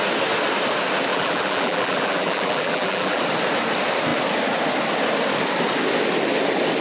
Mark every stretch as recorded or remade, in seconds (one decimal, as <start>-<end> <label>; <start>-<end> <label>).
0.0-1.1 recorded; 1.1-3.2 remade; 3.2-6.8 recorded